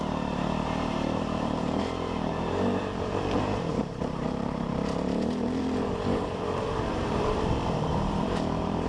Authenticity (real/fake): fake